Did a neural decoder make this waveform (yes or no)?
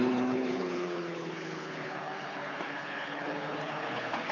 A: yes